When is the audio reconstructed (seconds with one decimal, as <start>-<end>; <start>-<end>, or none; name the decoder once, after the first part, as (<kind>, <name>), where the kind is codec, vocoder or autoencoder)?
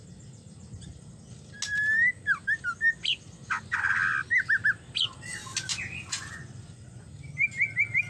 5.7-7.1 (vocoder, Vocos)